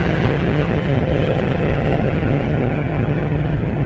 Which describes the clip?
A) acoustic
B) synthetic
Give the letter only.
B